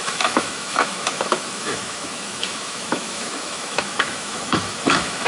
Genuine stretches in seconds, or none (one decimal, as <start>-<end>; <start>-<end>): none